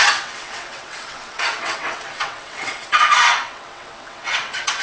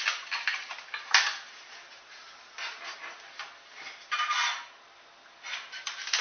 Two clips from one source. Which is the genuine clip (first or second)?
second